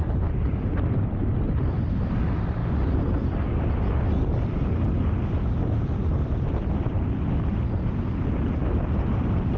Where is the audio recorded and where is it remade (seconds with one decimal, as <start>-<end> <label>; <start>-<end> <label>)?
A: 0.0-9.6 recorded